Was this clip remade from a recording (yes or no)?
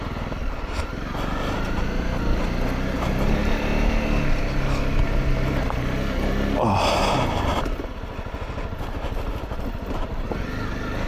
no